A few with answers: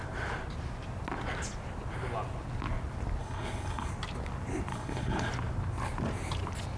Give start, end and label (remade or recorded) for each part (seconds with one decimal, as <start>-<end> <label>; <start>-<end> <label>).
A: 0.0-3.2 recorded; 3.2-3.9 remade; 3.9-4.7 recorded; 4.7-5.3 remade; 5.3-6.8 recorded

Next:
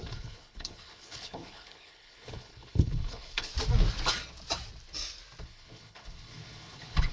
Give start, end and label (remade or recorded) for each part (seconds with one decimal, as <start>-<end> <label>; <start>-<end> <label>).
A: 0.0-3.5 remade; 3.5-5.4 recorded; 5.4-7.1 remade

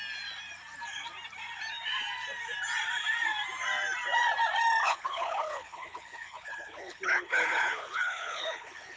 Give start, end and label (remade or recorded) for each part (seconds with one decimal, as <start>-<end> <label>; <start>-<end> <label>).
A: 0.0-4.8 recorded; 4.8-9.0 remade

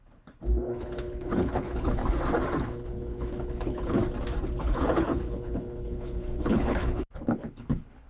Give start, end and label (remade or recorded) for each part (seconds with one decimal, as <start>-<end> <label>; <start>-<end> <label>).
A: 0.0-2.0 remade; 2.0-2.6 recorded; 2.6-4.0 remade; 4.0-4.6 recorded; 4.6-8.1 remade

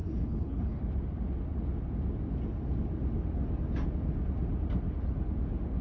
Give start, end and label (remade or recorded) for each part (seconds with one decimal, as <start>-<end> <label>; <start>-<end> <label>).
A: 0.0-0.8 remade; 0.8-5.8 recorded